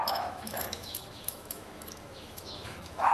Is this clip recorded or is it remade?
remade